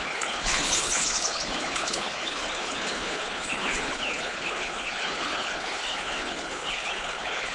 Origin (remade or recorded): remade